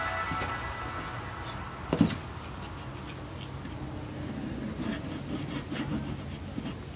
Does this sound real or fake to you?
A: real